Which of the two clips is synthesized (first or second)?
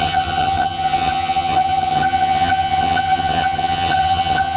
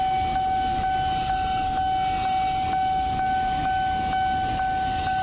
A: first